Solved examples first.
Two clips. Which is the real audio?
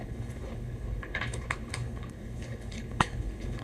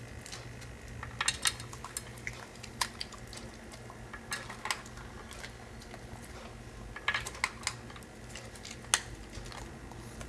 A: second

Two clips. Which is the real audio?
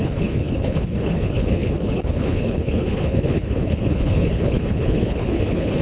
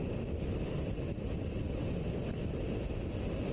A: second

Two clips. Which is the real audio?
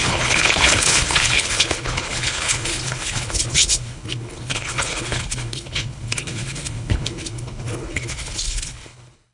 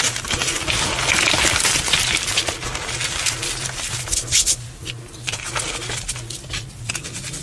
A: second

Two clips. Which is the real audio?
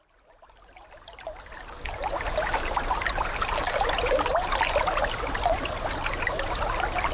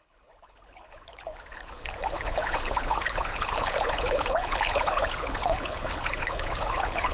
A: first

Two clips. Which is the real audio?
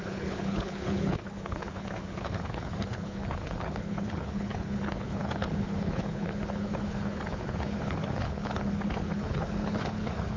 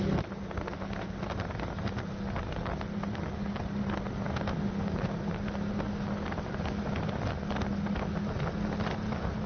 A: second